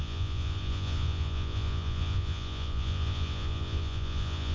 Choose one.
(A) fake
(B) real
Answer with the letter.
A